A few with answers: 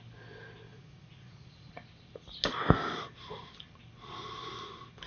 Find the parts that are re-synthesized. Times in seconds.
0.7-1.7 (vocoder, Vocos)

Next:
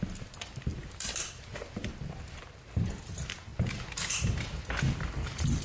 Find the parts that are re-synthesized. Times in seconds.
0.7-1.5 (vocoder, BigVGAN v2)

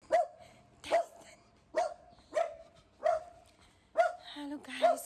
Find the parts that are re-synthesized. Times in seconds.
none